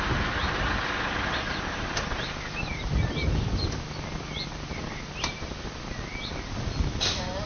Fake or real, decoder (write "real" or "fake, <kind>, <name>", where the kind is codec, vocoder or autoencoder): real